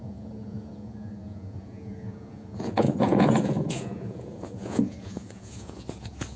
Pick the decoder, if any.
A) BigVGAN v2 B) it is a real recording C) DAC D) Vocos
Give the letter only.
D